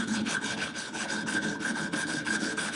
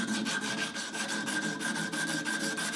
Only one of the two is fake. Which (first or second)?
first